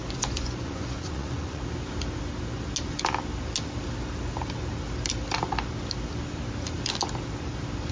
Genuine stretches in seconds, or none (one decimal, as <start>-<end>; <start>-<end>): 1.6-7.9